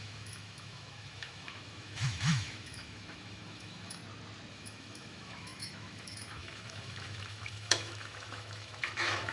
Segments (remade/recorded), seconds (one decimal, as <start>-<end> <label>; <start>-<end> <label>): 0.0-4.0 remade; 4.0-4.5 recorded; 4.5-9.3 remade